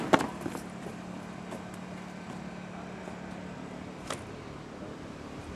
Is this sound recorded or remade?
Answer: recorded